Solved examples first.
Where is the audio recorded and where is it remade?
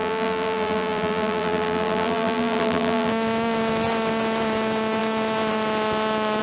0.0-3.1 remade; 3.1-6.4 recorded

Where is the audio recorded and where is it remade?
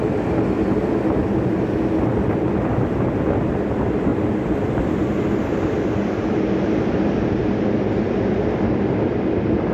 0.0-4.1 recorded; 4.1-4.8 remade; 4.8-9.7 recorded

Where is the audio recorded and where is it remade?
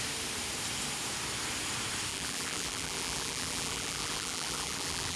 0.0-2.1 recorded; 2.1-5.2 remade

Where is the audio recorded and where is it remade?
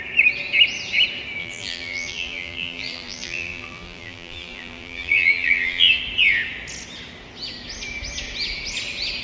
0.0-1.4 recorded; 1.4-6.0 remade; 6.0-9.2 recorded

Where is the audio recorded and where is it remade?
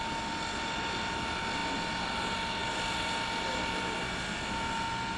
0.0-5.2 recorded